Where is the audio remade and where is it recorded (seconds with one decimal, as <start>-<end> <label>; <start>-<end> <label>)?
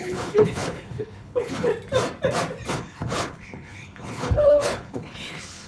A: 0.0-1.7 remade; 1.7-2.7 recorded; 2.7-5.7 remade